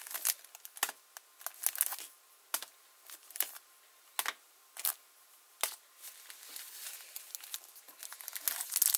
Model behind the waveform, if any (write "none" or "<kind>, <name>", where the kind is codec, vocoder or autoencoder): none